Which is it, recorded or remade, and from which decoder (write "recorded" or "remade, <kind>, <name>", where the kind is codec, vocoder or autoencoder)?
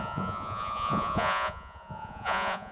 remade, vocoder, Vocos